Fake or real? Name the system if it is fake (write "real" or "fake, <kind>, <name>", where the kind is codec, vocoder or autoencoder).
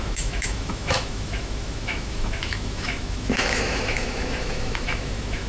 fake, autoencoder, DAC-VAE